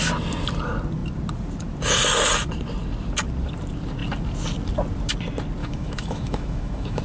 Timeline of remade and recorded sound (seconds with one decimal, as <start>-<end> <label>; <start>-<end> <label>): 0.0-5.6 recorded; 5.6-7.0 remade